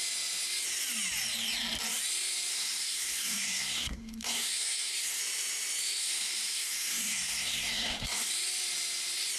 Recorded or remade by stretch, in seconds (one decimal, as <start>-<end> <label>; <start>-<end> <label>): 0.0-2.5 recorded; 2.5-5.2 remade; 5.2-6.0 recorded; 6.0-8.3 remade; 8.3-9.4 recorded